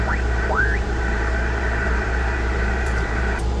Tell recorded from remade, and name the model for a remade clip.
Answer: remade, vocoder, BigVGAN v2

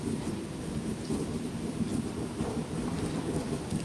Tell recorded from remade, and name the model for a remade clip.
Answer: remade, vocoder, BigVGAN v2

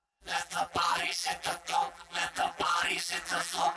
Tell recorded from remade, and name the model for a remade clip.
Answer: remade, vocoder, BigVGAN v2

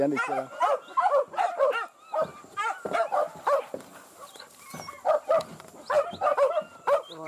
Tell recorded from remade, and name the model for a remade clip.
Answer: recorded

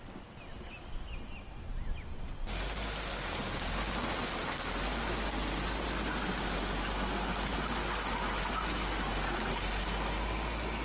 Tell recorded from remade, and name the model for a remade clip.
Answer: recorded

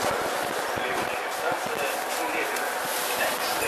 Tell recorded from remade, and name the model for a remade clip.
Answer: recorded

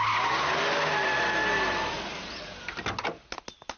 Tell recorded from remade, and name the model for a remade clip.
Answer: recorded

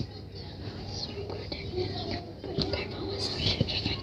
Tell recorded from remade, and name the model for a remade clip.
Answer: recorded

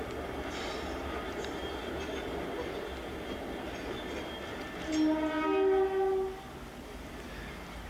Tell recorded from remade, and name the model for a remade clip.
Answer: recorded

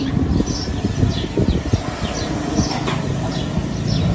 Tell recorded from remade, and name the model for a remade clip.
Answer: recorded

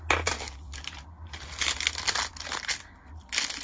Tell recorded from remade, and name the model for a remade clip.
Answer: recorded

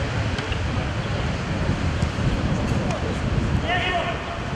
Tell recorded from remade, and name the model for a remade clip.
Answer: recorded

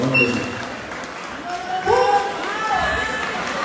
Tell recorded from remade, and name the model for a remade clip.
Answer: recorded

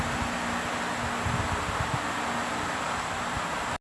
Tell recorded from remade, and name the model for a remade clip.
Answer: recorded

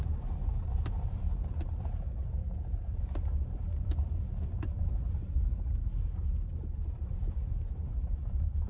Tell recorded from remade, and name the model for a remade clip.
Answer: remade, vocoder, BigVGAN v2